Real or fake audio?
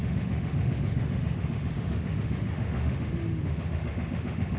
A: fake